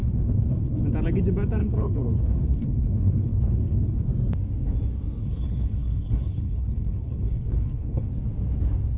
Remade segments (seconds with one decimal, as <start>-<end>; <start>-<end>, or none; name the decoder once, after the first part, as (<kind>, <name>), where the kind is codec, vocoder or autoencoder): 0.0-0.8 (codec, HILCodec); 1.6-4.1; 5.2-8.1